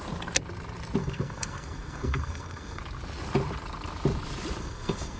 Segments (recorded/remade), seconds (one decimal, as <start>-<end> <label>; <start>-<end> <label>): 0.0-1.0 recorded; 1.0-2.8 remade; 2.8-4.6 recorded; 4.6-5.2 remade

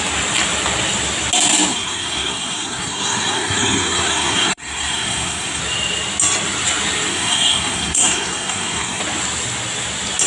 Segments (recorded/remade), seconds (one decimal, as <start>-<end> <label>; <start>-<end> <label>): 0.0-1.7 recorded; 1.7-5.6 remade; 5.6-7.1 recorded; 7.1-9.0 remade; 9.0-10.3 recorded

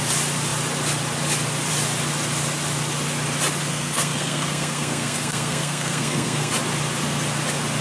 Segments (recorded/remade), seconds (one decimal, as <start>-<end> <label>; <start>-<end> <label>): 0.0-3.6 recorded; 3.6-6.5 remade; 6.5-7.8 recorded

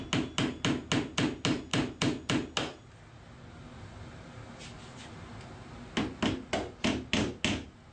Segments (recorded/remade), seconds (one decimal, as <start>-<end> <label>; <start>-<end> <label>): 0.0-7.9 recorded

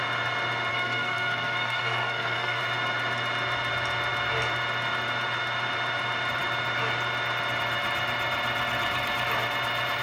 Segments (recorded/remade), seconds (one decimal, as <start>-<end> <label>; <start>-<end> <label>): 0.0-0.7 recorded; 0.7-2.6 remade; 2.6-10.0 recorded

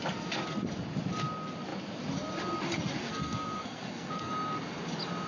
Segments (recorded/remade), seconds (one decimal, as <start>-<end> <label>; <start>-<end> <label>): 0.0-3.0 recorded; 3.0-4.3 remade; 4.3-5.3 recorded

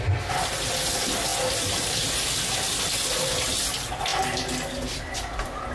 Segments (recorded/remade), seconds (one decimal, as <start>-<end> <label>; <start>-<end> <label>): 0.0-5.7 recorded